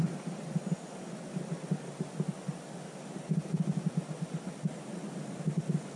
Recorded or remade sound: recorded